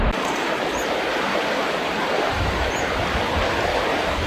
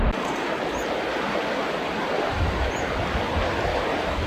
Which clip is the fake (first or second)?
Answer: first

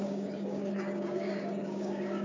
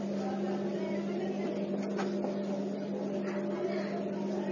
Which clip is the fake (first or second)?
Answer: first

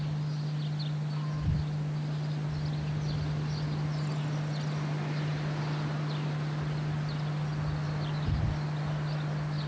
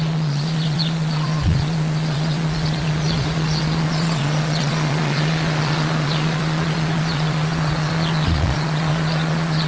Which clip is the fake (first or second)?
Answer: second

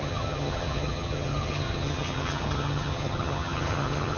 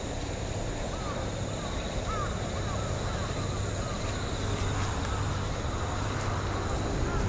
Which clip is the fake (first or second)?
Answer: first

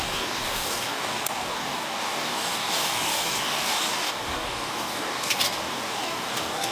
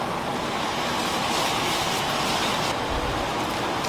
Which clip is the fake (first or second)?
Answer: first